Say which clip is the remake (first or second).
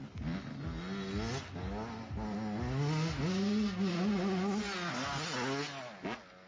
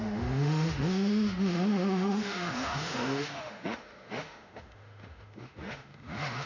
second